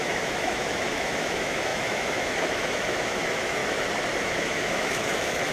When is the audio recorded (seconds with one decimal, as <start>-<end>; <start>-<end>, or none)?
3.6-4.2